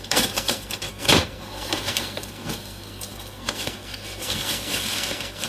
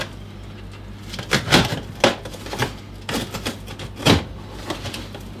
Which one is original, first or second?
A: second